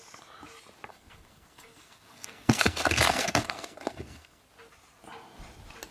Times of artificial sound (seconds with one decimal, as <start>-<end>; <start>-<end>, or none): 0.9-4.4